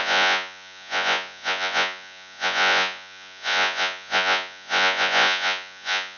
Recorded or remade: remade